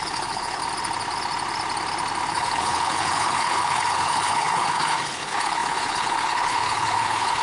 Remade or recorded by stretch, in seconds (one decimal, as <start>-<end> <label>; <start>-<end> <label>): 0.0-0.6 remade; 0.6-2.3 recorded; 2.3-7.4 remade